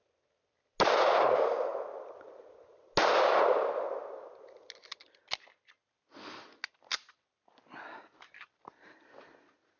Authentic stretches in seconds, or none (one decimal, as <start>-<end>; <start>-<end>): 0.0-9.8